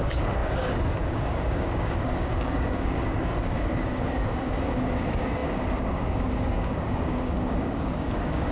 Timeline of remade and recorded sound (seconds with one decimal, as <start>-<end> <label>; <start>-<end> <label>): 0.0-8.5 remade